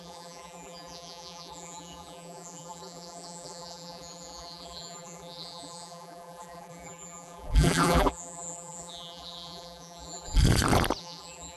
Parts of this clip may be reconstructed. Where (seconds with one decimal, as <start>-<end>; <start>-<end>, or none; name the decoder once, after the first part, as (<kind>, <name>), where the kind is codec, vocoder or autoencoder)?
0.0-10.4 (vocoder, BigVGAN v2); 11.0-11.6